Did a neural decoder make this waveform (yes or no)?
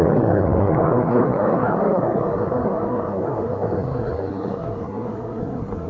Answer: yes